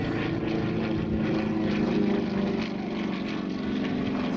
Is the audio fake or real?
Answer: real